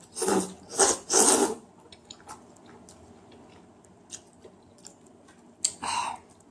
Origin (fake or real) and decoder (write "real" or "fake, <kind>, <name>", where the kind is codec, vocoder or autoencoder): real